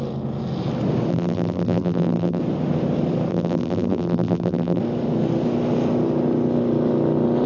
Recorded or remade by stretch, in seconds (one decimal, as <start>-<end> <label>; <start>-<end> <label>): 0.0-1.1 recorded; 1.1-2.4 remade; 2.4-3.3 recorded; 3.3-4.8 remade; 4.8-7.5 recorded